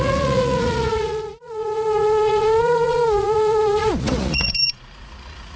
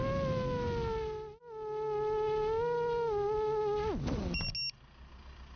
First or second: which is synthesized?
first